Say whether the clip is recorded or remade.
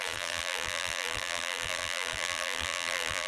remade